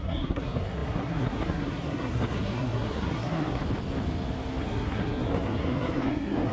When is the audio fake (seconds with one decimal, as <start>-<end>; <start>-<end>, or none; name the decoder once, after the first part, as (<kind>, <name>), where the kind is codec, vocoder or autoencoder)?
0.0-3.6 (codec, SNAC); 4.6-6.5